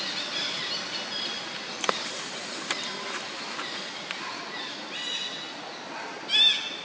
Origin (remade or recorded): recorded